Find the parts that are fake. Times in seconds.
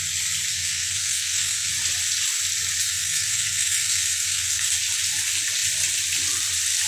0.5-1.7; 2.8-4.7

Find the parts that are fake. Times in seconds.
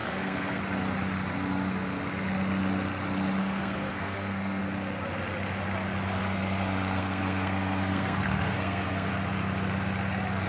0.0-0.6; 3.4-4.6; 6.2-9.1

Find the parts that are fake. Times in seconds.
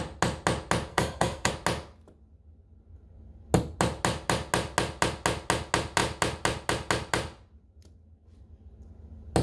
0.9-1.5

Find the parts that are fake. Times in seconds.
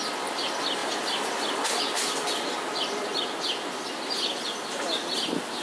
none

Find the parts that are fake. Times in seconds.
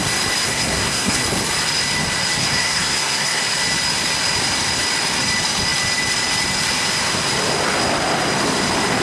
0.4-1.2; 2.4-3.4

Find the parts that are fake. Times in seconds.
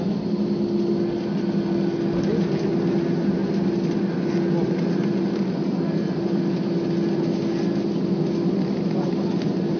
none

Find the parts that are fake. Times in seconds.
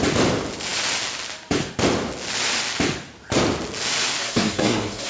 4.2-5.1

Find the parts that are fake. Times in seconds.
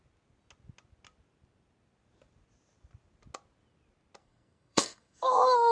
4.2-5.7